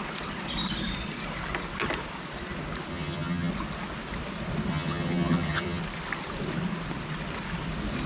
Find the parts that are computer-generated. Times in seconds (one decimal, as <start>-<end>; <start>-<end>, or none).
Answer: 2.9-3.5; 4.7-5.8